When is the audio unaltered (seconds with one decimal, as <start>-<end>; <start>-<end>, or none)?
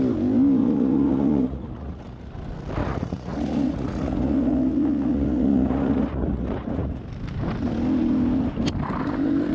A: 0.0-0.6; 2.3-2.8; 7.0-9.5